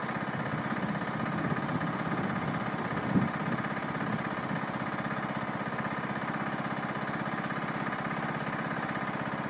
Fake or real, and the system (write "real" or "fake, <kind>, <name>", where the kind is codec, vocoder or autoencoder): real